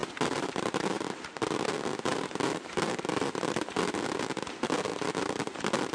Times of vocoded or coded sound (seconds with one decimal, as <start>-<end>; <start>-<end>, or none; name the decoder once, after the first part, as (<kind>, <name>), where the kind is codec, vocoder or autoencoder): 0.0-1.7 (vocoder, BigVGAN v2); 2.1-3.7; 4.9-5.9